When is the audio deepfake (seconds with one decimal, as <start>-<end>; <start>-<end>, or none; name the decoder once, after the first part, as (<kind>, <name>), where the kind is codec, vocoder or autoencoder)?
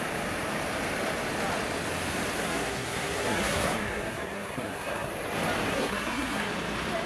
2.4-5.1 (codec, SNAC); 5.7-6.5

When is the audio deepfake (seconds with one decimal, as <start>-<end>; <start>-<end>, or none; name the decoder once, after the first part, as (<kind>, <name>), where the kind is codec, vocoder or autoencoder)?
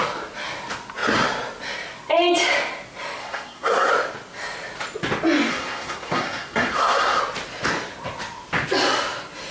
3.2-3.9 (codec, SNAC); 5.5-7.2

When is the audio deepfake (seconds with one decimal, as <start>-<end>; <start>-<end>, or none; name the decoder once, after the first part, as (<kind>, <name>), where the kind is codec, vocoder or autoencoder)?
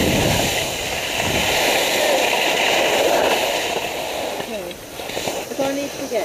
0.0-2.7 (vocoder, BigVGAN v2); 3.2-5.3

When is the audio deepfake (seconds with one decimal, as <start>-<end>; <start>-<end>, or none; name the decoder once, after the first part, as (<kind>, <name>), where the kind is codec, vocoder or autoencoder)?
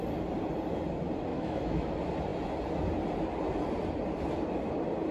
1.3-1.9 (autoencoder, DAC-VAE)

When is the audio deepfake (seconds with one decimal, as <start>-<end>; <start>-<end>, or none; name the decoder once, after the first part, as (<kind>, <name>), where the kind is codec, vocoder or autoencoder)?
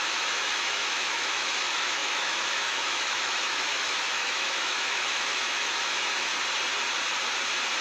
0.0-6.3 (autoencoder, DAC-VAE)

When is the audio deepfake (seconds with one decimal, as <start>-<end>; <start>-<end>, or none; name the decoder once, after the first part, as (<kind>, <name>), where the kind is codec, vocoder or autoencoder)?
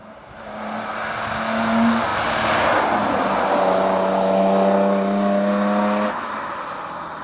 none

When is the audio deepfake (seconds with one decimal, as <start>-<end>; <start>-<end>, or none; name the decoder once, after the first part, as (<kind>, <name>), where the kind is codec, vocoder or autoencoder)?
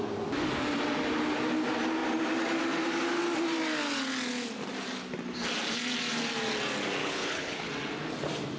7.0-7.7 (codec, HILCodec)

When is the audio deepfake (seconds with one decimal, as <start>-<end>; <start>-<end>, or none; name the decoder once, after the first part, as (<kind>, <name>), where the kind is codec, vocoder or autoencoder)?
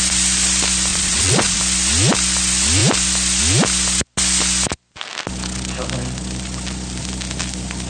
0.9-1.6 (vocoder, Vocos)